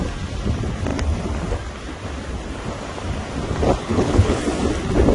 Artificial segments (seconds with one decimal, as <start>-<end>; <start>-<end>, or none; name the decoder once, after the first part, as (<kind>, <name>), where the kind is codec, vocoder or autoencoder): 3.8-4.4 (codec, HILCodec)